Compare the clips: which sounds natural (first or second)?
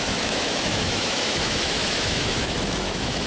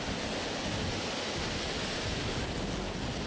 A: second